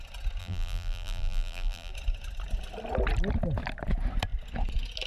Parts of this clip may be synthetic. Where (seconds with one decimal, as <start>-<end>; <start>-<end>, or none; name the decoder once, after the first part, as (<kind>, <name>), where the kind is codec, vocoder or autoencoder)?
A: 0.4-1.9 (vocoder, BigVGAN v2)